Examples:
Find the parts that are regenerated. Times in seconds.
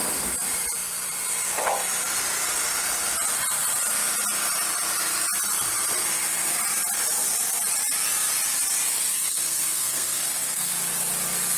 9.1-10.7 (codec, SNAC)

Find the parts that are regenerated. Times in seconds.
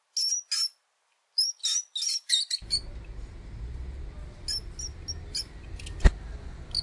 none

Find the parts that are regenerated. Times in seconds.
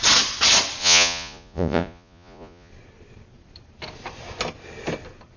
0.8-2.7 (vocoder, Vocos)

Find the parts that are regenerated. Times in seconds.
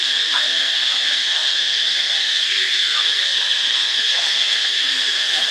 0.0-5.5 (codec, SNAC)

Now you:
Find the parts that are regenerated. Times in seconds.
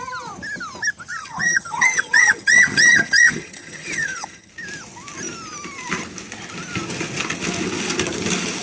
1.2-4.5 (vocoder, HiFi-GAN)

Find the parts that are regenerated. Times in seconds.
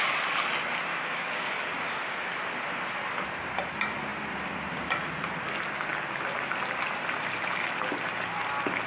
0.9-1.5 (codec, DAC)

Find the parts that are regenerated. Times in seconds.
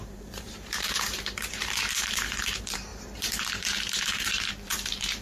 0.0-5.2 (vocoder, BigVGAN v2)